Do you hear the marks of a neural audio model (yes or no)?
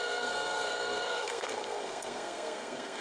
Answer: yes